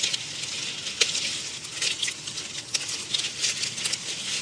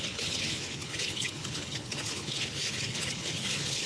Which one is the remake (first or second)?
second